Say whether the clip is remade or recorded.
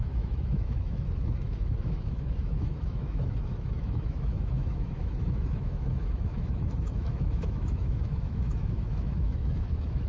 remade